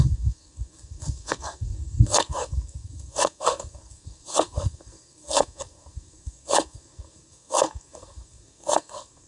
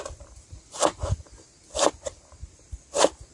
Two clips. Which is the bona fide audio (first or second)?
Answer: second